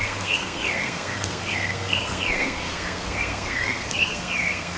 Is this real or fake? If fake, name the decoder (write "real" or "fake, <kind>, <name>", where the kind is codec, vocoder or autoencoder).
fake, codec, SNAC